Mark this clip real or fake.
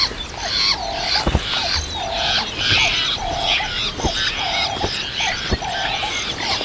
real